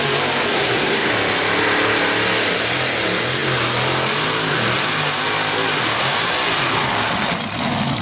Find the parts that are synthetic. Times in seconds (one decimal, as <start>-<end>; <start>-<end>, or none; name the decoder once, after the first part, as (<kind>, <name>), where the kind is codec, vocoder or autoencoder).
0.5-1.1 (codec, SNAC)